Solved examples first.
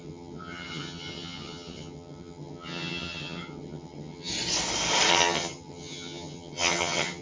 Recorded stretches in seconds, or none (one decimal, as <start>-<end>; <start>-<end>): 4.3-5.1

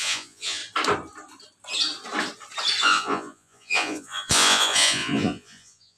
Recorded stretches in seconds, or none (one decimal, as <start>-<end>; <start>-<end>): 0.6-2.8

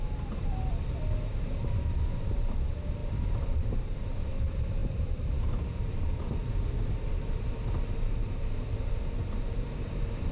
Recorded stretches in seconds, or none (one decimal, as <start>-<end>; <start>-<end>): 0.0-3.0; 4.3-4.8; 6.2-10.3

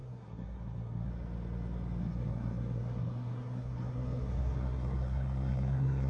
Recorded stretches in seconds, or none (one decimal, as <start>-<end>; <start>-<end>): 1.1-2.0

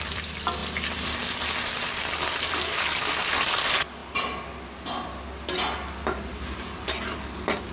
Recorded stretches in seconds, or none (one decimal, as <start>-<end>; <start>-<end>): 0.6-2.5; 4.0-7.7